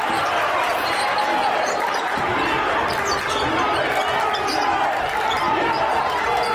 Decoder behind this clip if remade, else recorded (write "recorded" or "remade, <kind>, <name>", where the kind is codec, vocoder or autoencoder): recorded